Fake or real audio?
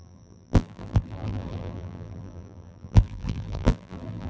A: fake